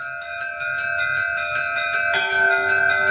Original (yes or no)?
yes